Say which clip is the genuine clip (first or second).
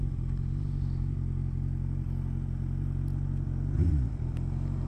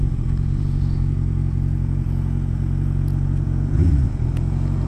first